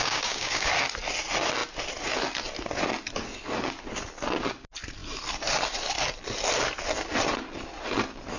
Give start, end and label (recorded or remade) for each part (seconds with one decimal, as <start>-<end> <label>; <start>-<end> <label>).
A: 0.0-0.7 remade; 0.7-8.4 recorded